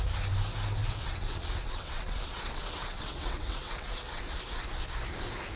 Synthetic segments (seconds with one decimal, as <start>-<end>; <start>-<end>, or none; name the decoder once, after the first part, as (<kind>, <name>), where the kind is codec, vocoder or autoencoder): 0.8-4.2 (vocoder, WaveNeXt)